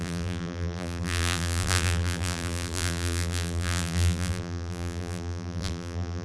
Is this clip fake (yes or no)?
yes